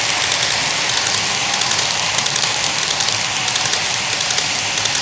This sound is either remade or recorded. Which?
recorded